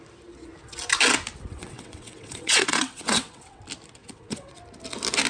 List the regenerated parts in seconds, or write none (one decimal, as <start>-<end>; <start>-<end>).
1.5-3.6; 4.0-4.6